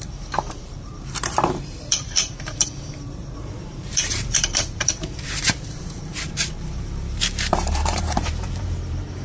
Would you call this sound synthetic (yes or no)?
yes